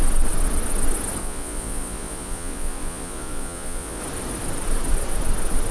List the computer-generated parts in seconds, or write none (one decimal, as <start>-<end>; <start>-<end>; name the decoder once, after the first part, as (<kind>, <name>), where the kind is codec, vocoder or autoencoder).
1.2-4.0 (vocoder, Vocos)